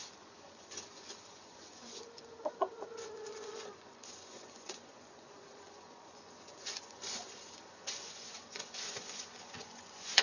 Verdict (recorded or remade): remade